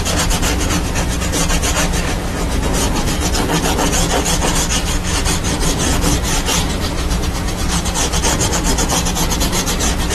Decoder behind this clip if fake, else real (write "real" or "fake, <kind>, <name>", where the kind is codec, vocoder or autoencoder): real